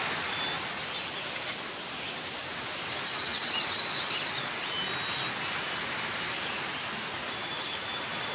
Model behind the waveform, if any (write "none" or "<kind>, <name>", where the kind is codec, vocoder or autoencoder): none